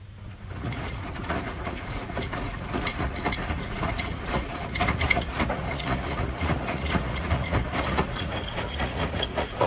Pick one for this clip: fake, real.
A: fake